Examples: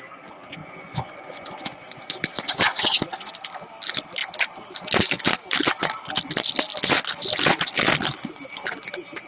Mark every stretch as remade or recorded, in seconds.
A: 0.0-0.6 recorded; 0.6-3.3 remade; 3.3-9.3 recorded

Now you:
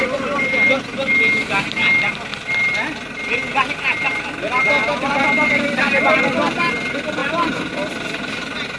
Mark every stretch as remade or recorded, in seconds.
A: 0.0-2.3 recorded; 2.3-6.7 remade; 6.7-7.2 recorded; 7.2-7.7 remade; 7.7-8.8 recorded

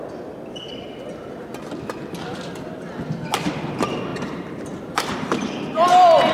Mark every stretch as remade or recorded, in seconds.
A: 0.0-4.1 recorded; 4.1-6.3 remade

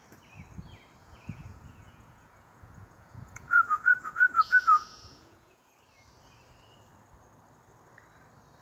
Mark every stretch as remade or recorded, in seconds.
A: 0.0-1.0 recorded; 1.0-5.7 remade; 5.7-8.6 recorded

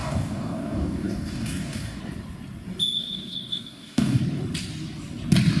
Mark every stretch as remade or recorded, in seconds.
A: 0.0-2.0 remade; 2.0-3.0 recorded; 3.0-4.2 remade; 4.2-5.6 recorded

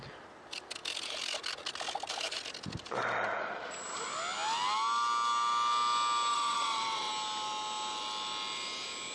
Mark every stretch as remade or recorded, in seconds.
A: 0.0-6.3 recorded; 6.3-7.1 remade; 7.1-9.1 recorded

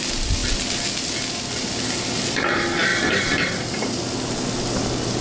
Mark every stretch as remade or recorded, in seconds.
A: 0.0-5.2 recorded

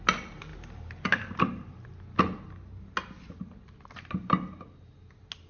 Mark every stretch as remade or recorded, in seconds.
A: 0.0-5.5 recorded